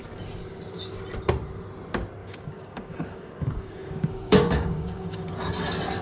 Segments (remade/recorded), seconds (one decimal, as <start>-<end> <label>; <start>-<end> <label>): 0.0-2.2 recorded; 2.2-5.3 remade; 5.3-6.0 recorded